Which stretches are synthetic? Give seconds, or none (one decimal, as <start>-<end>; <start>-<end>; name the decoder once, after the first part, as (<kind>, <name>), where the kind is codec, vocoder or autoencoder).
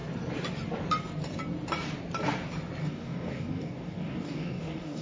2.8-5.0 (codec, DAC)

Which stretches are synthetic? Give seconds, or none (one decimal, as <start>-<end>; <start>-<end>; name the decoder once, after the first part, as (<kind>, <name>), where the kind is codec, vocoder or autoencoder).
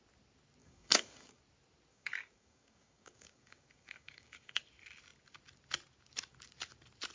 0.6-1.4 (codec, DAC); 1.9-4.6